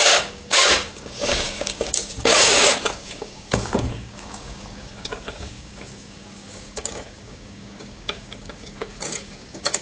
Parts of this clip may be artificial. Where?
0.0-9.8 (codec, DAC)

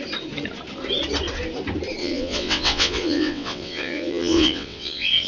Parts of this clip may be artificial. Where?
2.0-5.3 (vocoder, WaveNeXt)